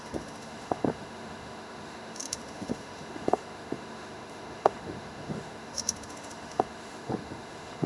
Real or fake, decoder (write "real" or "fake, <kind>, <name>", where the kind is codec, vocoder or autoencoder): fake, autoencoder, DAC-VAE